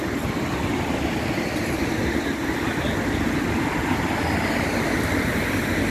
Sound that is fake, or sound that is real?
real